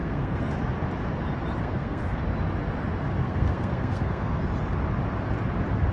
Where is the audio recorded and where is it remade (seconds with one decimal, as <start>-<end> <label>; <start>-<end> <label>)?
0.0-0.5 remade; 0.5-1.6 recorded; 1.6-2.2 remade; 2.2-3.2 recorded; 3.2-4.4 remade; 4.4-5.9 recorded